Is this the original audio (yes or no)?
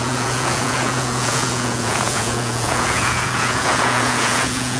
no